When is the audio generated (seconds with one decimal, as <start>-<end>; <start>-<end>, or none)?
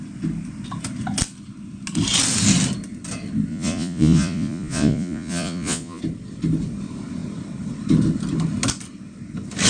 3.5-6.0